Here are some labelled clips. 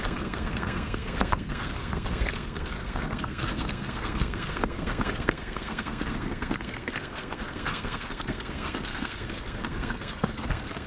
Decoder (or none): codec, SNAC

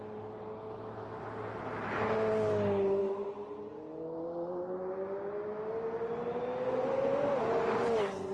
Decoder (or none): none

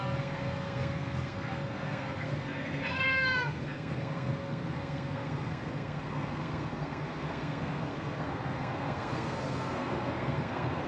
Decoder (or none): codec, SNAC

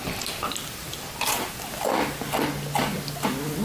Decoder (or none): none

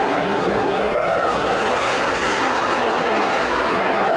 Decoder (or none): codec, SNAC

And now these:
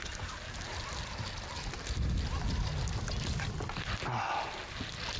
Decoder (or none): none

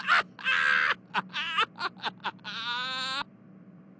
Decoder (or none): none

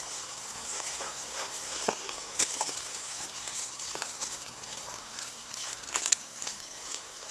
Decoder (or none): codec, SNAC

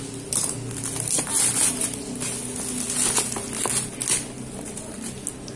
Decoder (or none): none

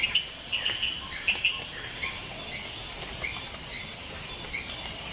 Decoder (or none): none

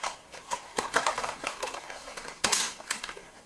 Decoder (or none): codec, SNAC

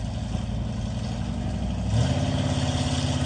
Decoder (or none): none